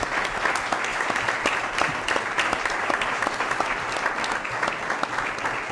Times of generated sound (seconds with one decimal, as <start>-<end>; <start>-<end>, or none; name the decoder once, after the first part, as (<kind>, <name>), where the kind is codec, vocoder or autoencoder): 0.9-3.8 (vocoder, BigVGAN v2)